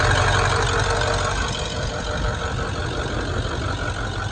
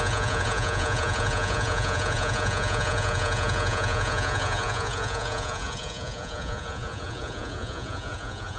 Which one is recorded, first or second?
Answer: first